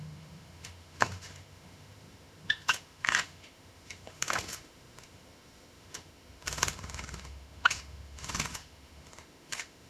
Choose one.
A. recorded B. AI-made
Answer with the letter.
B